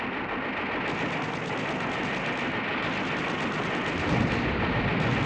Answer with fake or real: real